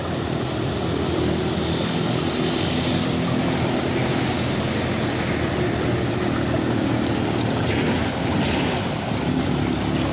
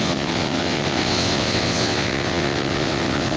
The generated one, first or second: second